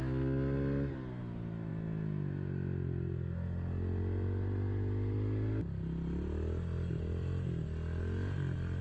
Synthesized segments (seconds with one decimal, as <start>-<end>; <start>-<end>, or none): none